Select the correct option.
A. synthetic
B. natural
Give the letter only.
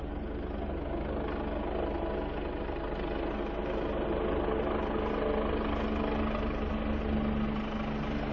B